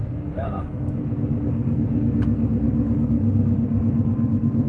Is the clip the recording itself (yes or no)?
no